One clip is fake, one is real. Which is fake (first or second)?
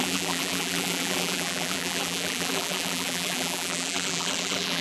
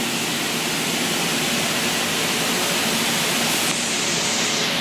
first